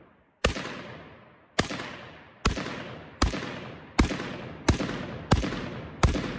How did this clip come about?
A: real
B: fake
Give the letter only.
A